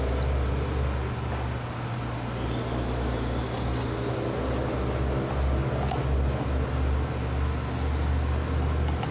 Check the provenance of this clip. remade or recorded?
recorded